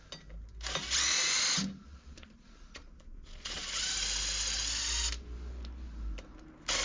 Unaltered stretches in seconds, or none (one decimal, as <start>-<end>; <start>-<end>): 0.0-1.9; 3.7-6.8